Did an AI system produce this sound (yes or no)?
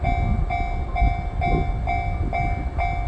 no